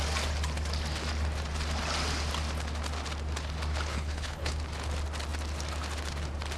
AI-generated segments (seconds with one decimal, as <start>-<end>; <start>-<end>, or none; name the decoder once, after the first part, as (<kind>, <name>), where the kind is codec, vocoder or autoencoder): 3.9-4.5 (codec, HILCodec)